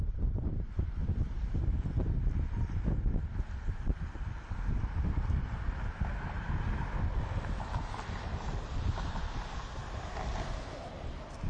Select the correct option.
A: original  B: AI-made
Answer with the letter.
A